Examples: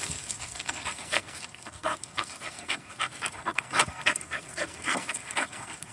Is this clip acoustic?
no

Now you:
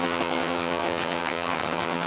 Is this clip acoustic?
no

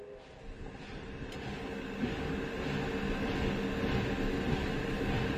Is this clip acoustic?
yes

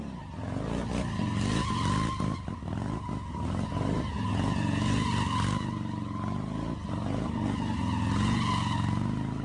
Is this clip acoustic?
yes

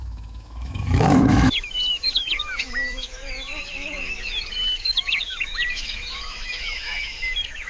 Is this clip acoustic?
no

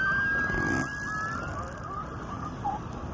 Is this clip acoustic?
yes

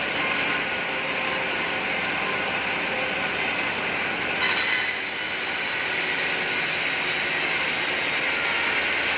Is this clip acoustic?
yes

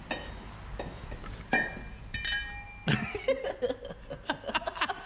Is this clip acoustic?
yes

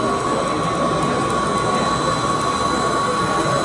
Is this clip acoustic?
yes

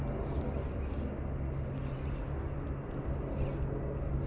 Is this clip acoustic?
yes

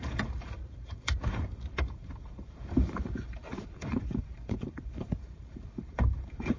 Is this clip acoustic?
no